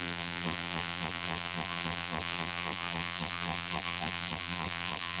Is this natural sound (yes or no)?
no